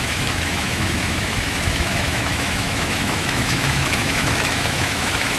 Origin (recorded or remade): remade